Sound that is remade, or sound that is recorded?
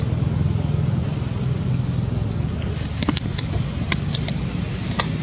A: recorded